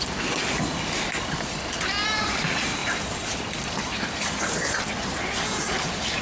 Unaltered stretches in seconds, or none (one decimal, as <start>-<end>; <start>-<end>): 0.0-6.2